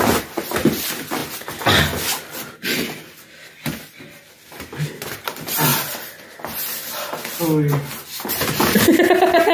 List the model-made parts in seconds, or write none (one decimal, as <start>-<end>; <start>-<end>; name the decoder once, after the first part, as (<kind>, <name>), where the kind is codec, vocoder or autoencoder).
none

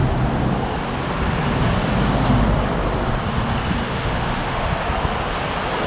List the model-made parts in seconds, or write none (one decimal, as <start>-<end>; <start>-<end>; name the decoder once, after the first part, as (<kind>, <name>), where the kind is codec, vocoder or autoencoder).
3.8-4.7 (autoencoder, DAC-VAE)

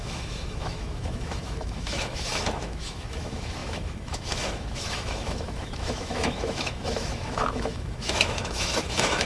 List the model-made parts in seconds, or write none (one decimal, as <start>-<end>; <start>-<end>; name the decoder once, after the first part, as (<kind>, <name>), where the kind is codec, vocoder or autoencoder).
0.0-9.3 (autoencoder, DAC-VAE)

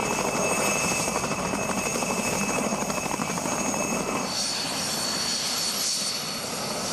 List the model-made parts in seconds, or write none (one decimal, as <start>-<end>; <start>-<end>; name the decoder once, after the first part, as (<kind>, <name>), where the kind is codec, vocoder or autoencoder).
none

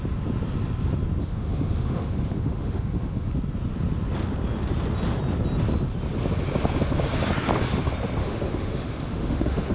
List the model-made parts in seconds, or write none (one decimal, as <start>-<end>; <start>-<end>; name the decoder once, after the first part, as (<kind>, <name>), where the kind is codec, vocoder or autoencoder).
1.2-3.3 (autoencoder, DAC-VAE); 8.2-9.7